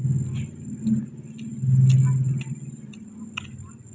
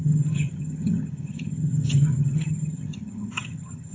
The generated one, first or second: second